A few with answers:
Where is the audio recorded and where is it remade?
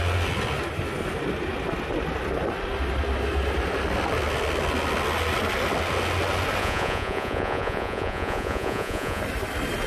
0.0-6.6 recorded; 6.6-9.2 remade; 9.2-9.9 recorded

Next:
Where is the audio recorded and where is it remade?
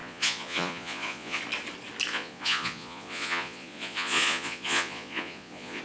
0.0-1.4 remade; 1.4-2.1 recorded; 2.1-5.8 remade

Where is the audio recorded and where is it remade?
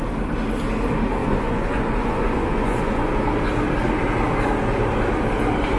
0.0-1.2 recorded; 1.2-3.1 remade; 3.1-5.8 recorded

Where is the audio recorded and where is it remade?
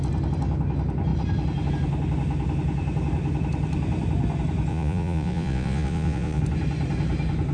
0.0-4.7 recorded; 4.7-6.4 remade; 6.4-7.5 recorded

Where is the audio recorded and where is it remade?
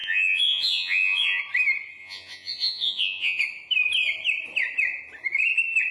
0.0-1.4 remade; 1.4-2.0 recorded; 2.0-3.4 remade; 3.4-5.9 recorded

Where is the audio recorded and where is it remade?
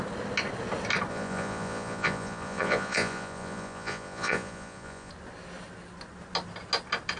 0.0-1.1 recorded; 1.1-5.1 remade; 5.1-7.2 recorded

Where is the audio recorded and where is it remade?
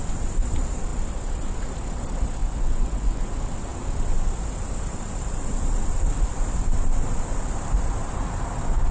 0.0-2.4 recorded; 2.4-3.2 remade; 3.2-8.9 recorded